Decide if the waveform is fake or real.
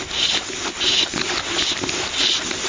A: real